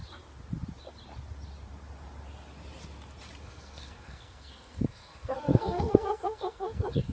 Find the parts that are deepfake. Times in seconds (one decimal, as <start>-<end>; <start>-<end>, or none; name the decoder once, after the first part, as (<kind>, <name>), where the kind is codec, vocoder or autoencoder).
3.4-7.1 (codec, SNAC)